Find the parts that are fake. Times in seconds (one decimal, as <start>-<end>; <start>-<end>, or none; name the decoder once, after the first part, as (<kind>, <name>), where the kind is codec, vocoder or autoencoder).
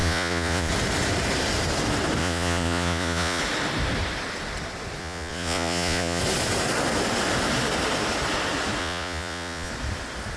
0.0-0.7 (vocoder, Vocos); 2.2-3.4; 5.0-6.2; 8.8-9.7